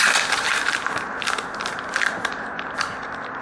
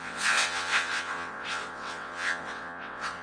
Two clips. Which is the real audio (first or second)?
first